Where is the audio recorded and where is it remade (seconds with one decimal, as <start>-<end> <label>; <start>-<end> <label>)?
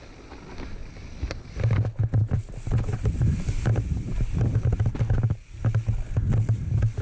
0.0-0.8 recorded; 0.8-1.5 remade; 1.5-2.2 recorded; 2.2-3.5 remade; 3.5-7.0 recorded